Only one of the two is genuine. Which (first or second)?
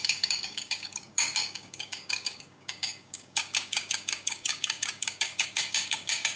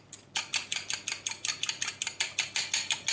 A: second